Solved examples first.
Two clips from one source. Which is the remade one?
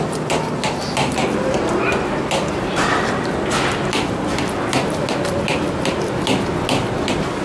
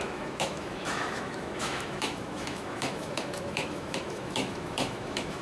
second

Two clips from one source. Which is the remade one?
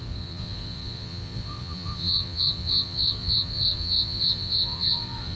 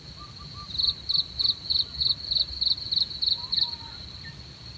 first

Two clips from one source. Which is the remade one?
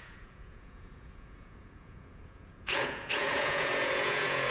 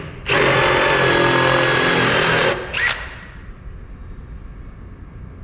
first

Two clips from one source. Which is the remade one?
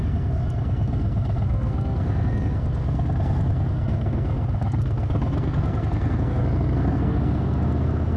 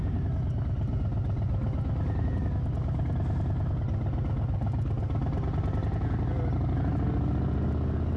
first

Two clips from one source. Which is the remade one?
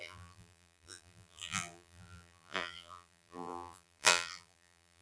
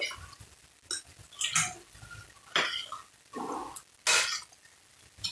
first